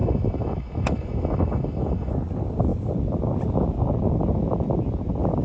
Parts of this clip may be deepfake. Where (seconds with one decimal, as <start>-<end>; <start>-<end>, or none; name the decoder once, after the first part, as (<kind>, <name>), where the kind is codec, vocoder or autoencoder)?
0.0-2.1 (autoencoder, DAC-VAE)